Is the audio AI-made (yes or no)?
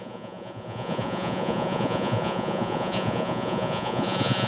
yes